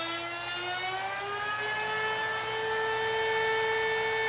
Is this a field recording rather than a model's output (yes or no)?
yes